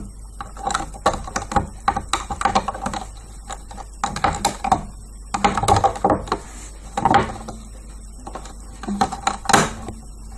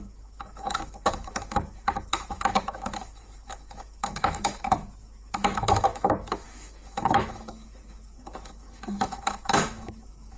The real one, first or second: first